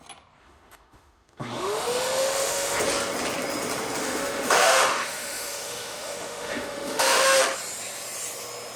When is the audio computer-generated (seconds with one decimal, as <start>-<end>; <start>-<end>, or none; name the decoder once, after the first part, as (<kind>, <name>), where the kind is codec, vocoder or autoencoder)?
0.4-2.8 (autoencoder, DAC-VAE); 4.0-7.4